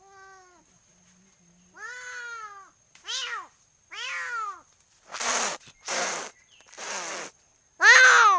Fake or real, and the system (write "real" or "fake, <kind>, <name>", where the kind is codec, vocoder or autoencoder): real